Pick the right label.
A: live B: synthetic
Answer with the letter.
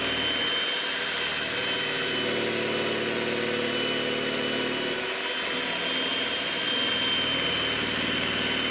A